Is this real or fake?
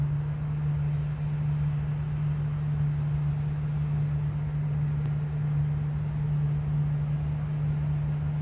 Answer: real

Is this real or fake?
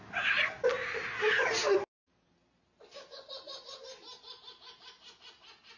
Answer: real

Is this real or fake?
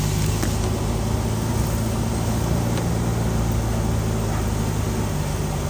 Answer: real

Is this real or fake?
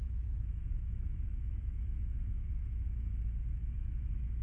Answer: fake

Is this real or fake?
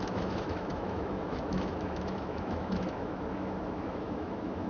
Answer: fake